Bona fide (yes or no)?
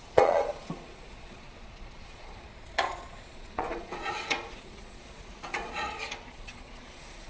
no